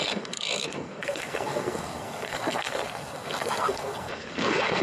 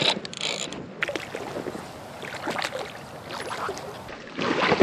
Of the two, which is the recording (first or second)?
second